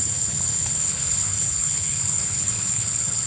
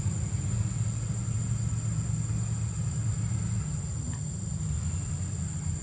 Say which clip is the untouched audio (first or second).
second